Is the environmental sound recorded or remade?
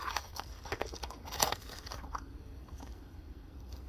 remade